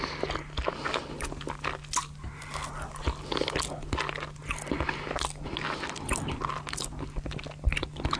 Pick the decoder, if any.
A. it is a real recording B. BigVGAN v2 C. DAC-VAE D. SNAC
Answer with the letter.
A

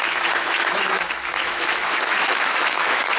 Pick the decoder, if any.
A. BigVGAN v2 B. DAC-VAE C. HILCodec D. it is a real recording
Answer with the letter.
B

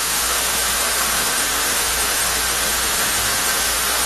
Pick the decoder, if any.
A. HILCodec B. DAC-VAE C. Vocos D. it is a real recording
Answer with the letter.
B